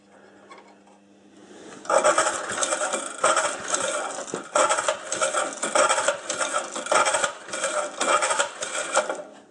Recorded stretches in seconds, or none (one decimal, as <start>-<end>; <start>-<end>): 0.0-9.5